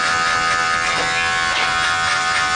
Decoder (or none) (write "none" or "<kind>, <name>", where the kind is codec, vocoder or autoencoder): none